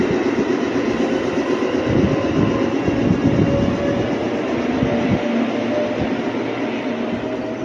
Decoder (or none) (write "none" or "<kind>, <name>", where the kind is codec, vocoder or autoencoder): none